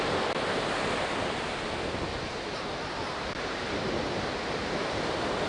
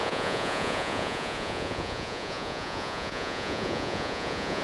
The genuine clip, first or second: first